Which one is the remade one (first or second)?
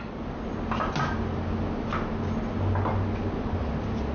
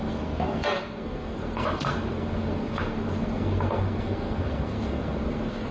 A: second